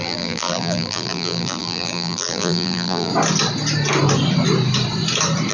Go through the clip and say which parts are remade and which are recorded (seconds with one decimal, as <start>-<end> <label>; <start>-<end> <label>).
0.0-3.1 remade; 3.1-5.5 recorded